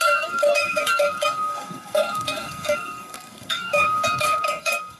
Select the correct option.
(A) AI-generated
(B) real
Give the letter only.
A